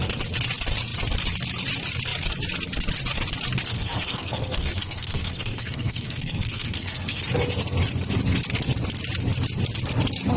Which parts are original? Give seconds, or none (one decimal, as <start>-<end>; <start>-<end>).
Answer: 0.0-3.7; 7.2-10.4